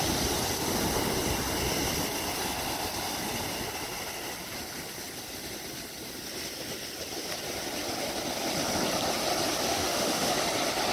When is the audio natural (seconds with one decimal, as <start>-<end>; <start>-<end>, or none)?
0.0-9.7; 10.3-10.9